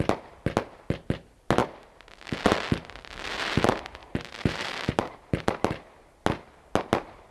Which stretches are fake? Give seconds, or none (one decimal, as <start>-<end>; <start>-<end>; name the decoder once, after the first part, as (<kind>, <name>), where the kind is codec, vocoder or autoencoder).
4.0-4.9 (vocoder, BigVGAN v2)